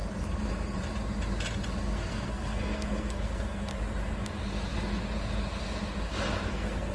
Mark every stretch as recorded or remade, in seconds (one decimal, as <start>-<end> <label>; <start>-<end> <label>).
0.0-1.8 recorded; 1.8-3.7 remade; 3.7-6.5 recorded; 6.5-6.9 remade